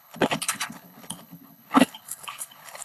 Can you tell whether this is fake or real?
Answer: fake